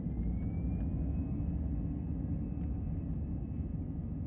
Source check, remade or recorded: recorded